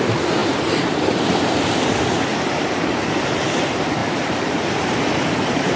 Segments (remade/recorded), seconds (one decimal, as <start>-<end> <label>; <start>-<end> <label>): 0.0-0.4 recorded; 0.4-1.2 remade; 1.2-2.3 recorded; 2.3-3.4 remade; 3.4-4.0 recorded; 4.0-5.8 remade